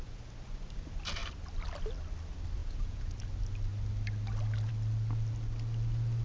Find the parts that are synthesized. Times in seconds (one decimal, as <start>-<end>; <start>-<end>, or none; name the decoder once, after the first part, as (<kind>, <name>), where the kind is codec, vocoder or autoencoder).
2.6-3.1 (vocoder, Vocos)